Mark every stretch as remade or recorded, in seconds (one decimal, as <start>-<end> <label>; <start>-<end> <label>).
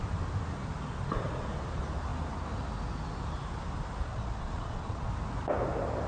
0.0-4.1 recorded; 4.1-5.1 remade; 5.1-6.1 recorded